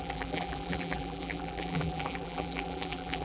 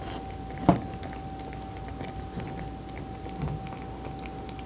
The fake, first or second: first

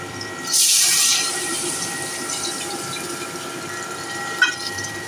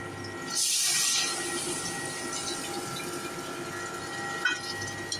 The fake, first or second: first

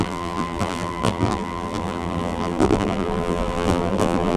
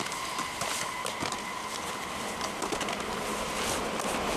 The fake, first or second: first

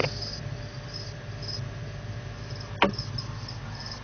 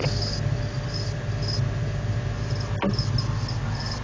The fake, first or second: first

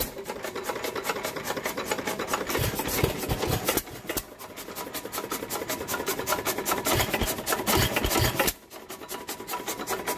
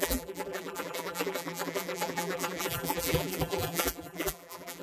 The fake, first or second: second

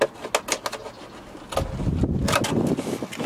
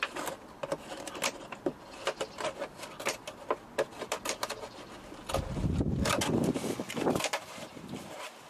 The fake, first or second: second